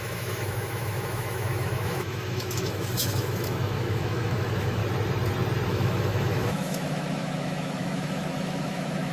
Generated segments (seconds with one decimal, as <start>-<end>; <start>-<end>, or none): 0.0-4.8; 5.7-9.1